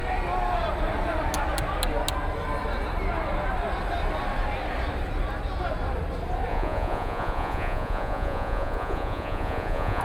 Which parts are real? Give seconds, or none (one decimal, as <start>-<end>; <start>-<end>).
0.0-6.5